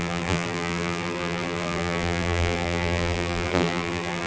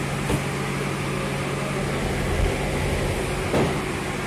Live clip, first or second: second